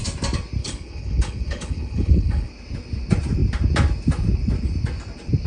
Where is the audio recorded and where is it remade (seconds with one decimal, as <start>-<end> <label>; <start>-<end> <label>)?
0.0-0.6 recorded; 0.6-2.5 remade; 2.5-5.5 recorded